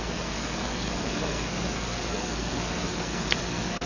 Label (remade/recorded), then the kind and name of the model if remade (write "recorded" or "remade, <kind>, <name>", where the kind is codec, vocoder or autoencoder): remade, codec, SNAC